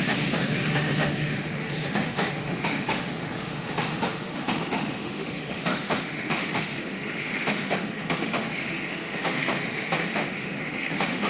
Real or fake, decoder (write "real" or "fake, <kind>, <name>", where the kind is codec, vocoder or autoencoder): fake, autoencoder, DAC-VAE